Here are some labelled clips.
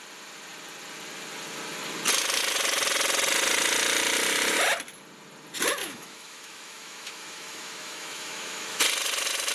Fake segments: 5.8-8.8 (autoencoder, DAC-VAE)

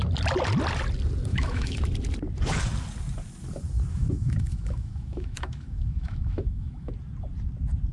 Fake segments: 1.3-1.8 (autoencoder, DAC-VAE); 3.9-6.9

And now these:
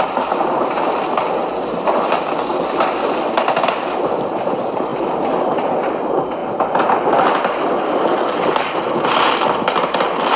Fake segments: none

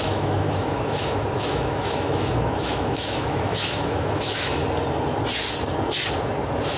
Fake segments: 0.0-4.6 (autoencoder, DAC-VAE)

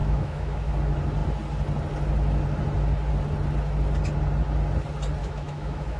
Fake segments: 0.0-0.7 (autoencoder, DAC-VAE); 5.2-6.0

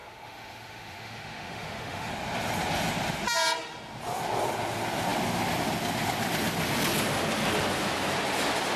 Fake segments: 0.0-2.1 (autoencoder, DAC-VAE)